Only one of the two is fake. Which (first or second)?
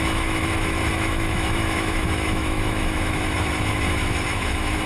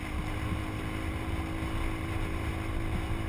first